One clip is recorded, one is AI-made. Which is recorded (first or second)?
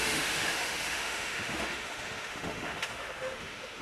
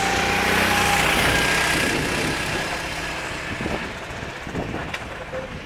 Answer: second